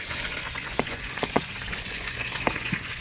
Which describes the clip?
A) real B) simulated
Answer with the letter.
B